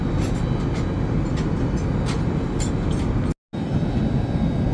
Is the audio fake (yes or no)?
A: no